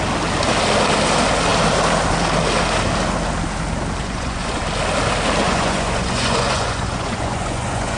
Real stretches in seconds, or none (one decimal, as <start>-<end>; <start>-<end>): 0.0-4.0; 4.6-5.4

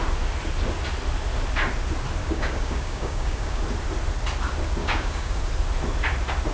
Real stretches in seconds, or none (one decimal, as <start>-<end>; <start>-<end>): 0.0-2.2; 3.6-4.8; 5.4-6.5

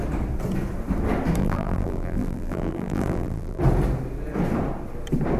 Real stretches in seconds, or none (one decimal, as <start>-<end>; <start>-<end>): 0.0-1.4; 3.6-5.4

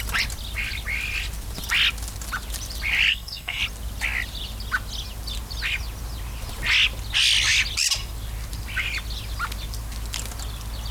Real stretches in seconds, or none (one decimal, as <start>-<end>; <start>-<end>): 0.0-3.1; 3.6-10.9

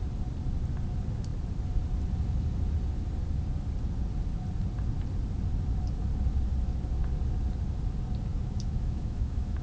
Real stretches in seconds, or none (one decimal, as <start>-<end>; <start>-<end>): 0.0-8.3

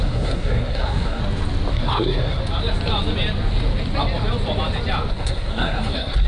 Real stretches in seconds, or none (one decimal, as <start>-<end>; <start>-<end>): 1.2-1.7; 2.4-5.1

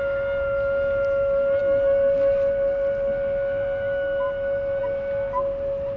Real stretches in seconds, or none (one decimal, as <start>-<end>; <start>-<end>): 0.0-6.0

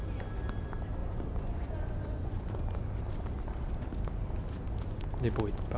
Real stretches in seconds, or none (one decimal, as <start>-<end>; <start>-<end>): 0.0-1.0; 2.8-5.8